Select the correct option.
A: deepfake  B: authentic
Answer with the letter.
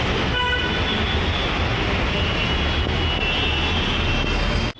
B